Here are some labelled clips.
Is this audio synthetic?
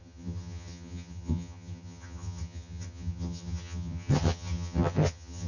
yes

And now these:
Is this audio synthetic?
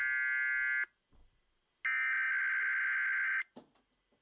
no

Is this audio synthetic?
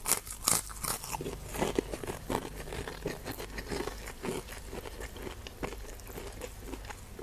no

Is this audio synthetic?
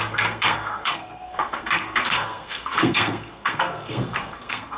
yes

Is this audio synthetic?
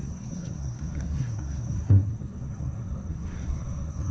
yes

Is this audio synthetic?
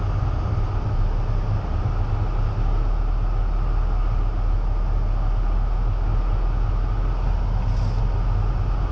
no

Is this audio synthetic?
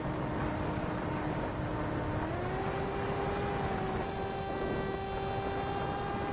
no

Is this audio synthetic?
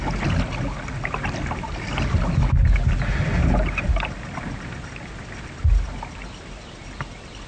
no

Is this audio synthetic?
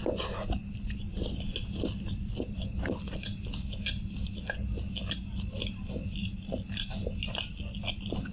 no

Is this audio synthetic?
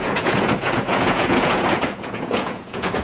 yes